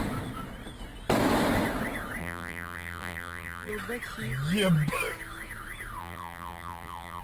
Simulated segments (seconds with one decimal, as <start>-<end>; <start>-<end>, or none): 2.2-3.7; 6.0-7.2